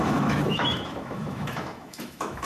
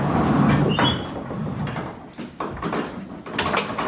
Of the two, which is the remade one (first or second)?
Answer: first